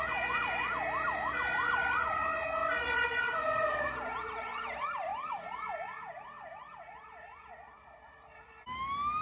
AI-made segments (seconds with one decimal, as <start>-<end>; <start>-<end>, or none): 2.6-3.7; 5.1-8.6